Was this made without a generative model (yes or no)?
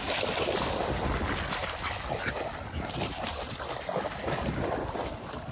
yes